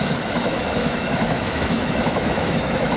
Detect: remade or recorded remade